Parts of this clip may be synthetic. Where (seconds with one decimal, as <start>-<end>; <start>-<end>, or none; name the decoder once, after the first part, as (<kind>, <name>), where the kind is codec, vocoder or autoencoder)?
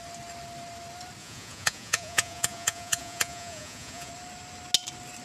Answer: 1.2-4.1 (vocoder, Vocos)